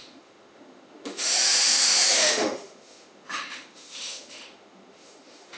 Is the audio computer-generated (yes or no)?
yes